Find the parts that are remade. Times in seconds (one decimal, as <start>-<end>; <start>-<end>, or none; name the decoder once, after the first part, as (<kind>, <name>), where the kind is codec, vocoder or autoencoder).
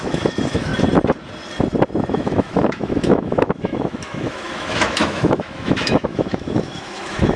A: 0.0-0.7 (autoencoder, DAC-VAE); 2.1-7.4